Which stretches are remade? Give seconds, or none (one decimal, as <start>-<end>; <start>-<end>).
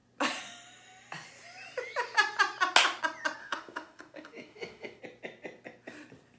3.4-5.0